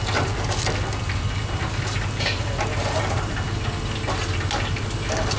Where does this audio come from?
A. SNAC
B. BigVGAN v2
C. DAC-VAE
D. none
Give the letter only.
D